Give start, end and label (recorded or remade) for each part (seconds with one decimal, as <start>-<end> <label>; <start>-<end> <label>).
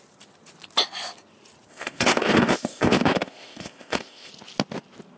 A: 0.0-1.7 recorded; 1.7-4.3 remade; 4.3-5.2 recorded